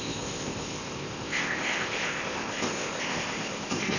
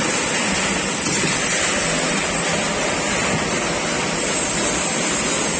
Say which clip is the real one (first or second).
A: second